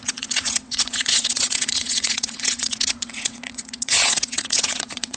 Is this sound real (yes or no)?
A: no